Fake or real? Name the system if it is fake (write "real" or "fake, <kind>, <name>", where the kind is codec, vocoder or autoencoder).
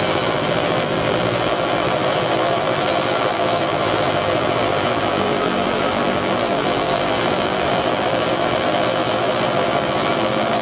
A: fake, vocoder, BigVGAN v2